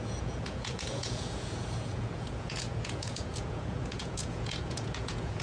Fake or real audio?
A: fake